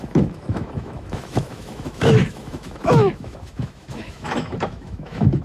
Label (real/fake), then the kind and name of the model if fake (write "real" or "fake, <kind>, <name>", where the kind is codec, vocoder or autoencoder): fake, autoencoder, DAC-VAE